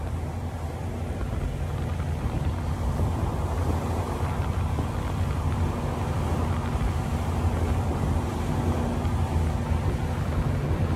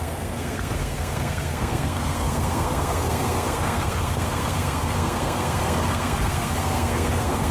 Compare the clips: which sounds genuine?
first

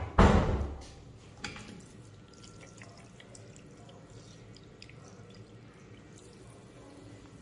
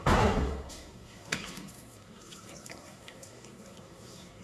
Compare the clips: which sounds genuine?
first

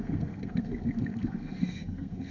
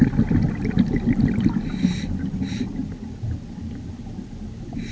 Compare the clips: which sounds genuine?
second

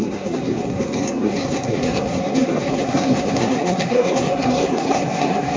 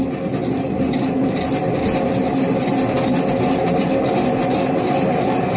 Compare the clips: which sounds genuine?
second